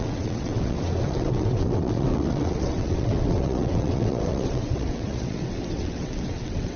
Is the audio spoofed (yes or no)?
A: yes